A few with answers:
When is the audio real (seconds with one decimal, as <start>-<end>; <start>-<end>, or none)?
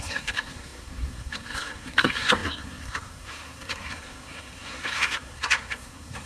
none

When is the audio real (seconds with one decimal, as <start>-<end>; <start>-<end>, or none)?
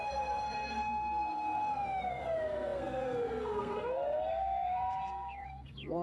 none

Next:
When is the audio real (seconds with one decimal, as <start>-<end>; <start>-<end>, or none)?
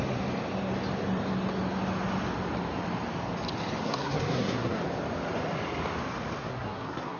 0.0-3.8; 4.8-6.4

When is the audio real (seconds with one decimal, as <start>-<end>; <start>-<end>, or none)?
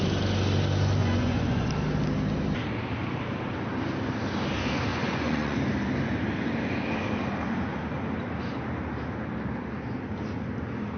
0.0-1.0; 1.7-4.9; 5.6-11.0